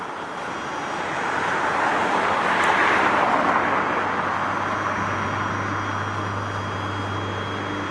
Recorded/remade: recorded